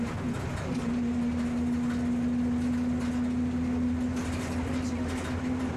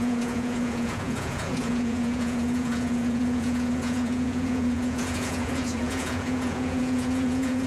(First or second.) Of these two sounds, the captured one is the first